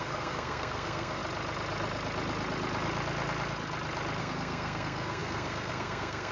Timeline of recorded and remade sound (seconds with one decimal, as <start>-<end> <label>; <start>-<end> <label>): 0.0-1.2 remade; 1.2-4.2 recorded; 4.2-6.3 remade